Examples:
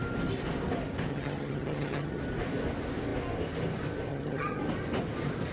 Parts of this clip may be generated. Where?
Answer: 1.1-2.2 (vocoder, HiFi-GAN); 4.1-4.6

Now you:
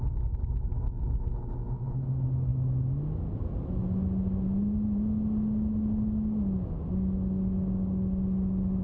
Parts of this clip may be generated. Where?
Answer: none

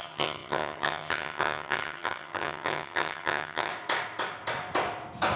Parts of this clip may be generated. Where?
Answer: 0.0-3.7 (vocoder, HiFi-GAN)

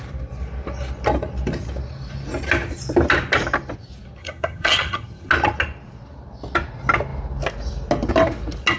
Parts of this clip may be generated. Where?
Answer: 4.2-5.3 (vocoder, HiFi-GAN)

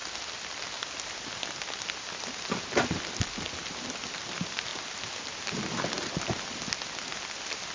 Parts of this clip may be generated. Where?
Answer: none

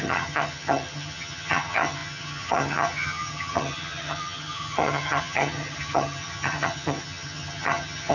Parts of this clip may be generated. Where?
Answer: 0.0-8.1 (vocoder, HiFi-GAN)

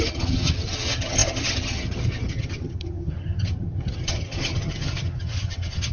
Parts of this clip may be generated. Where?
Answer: 0.0-5.9 (vocoder, HiFi-GAN)